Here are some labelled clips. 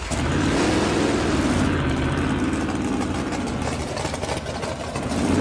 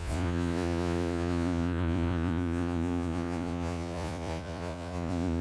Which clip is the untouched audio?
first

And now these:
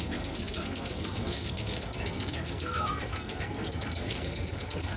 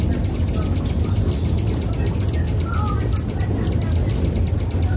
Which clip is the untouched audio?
second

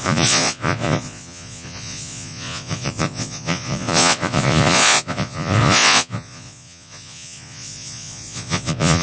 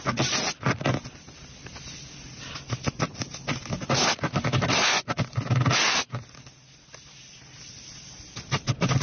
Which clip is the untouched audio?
second